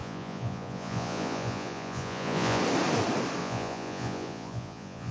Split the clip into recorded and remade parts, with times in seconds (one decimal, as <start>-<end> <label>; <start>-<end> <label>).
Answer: 0.0-2.6 remade; 2.6-3.4 recorded; 3.4-5.1 remade